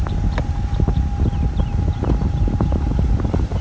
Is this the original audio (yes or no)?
yes